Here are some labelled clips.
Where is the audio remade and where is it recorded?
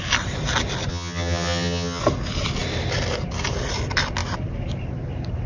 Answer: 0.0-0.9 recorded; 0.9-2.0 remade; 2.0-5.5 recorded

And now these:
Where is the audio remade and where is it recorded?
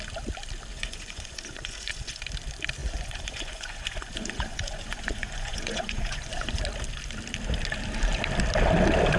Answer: 0.0-0.7 recorded; 0.7-2.2 remade; 2.2-2.8 recorded; 2.8-6.6 remade; 6.6-9.2 recorded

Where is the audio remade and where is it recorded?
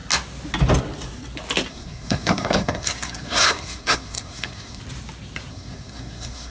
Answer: 0.0-1.7 recorded; 1.7-4.8 remade; 4.8-5.5 recorded; 5.5-6.5 remade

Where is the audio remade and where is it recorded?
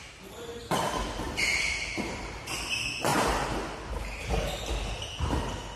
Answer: 0.0-5.8 recorded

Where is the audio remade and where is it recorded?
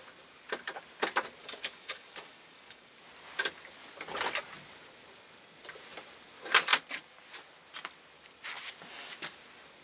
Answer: 0.0-1.4 recorded; 1.4-3.0 remade; 3.0-9.8 recorded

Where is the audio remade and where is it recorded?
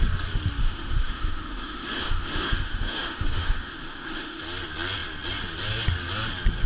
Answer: 0.0-0.6 recorded; 0.6-4.4 remade; 4.4-6.7 recorded